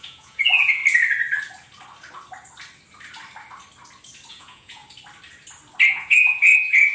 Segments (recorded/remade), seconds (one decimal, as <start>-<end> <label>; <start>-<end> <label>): 0.0-0.8 remade; 0.8-4.3 recorded; 4.3-4.8 remade; 4.8-5.9 recorded; 5.9-6.9 remade